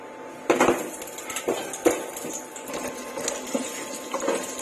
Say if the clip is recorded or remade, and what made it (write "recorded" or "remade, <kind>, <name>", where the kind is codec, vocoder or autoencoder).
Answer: recorded